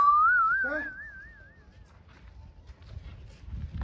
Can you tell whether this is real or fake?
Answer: real